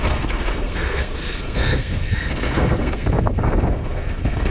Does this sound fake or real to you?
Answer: fake